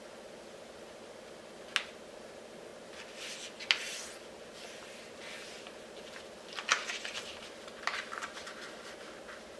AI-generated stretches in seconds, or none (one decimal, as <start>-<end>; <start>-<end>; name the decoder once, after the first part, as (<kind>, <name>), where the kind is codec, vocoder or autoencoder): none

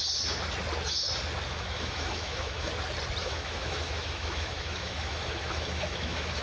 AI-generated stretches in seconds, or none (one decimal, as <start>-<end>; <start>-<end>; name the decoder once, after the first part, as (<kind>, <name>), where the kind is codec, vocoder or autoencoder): 1.5-2.7 (autoencoder, DAC-VAE); 3.2-6.4

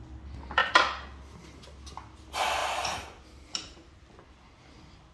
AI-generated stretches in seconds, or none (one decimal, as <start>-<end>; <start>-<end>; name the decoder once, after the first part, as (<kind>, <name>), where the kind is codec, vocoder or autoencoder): none

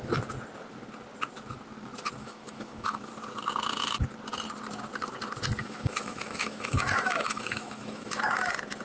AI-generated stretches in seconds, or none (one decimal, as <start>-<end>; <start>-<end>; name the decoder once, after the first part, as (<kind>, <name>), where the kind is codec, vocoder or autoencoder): 2.2-3.1 (autoencoder, DAC-VAE); 5.6-8.2